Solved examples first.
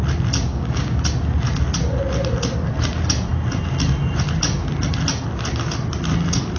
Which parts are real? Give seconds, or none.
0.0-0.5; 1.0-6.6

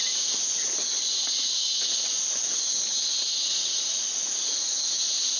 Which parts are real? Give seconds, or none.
0.0-5.4

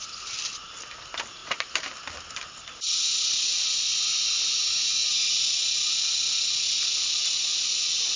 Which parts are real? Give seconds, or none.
0.0-8.2

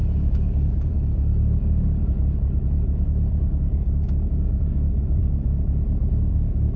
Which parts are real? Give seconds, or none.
2.0-3.4; 5.2-6.1

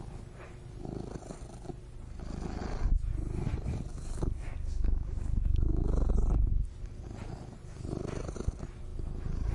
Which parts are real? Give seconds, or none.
0.0-3.9; 5.8-9.5

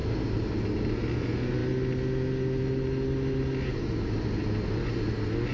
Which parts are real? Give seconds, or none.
0.0-5.5